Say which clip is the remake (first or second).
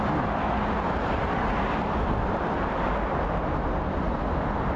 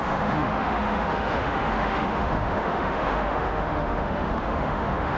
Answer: second